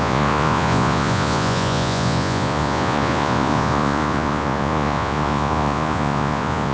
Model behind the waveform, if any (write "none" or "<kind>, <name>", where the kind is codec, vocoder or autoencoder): vocoder, Vocos